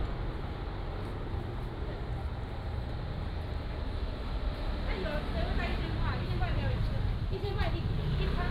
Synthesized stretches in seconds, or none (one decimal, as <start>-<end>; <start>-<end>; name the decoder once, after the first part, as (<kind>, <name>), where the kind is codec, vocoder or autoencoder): none